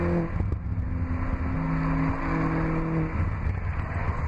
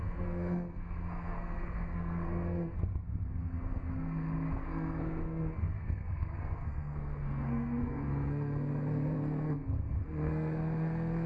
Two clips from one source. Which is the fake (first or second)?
second